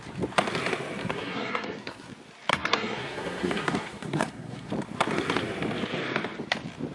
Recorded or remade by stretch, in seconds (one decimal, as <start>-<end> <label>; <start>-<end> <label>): 0.0-1.0 recorded; 1.0-2.1 remade; 2.1-2.5 recorded; 2.5-4.7 remade; 4.7-6.9 recorded